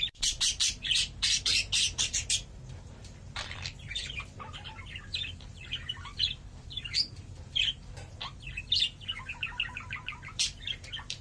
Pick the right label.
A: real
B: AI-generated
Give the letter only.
B